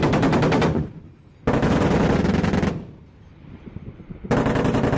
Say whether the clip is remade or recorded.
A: recorded